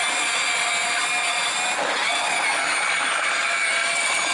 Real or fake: real